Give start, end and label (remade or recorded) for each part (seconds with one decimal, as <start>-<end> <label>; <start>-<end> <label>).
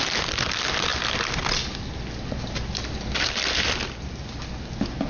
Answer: 0.0-5.1 recorded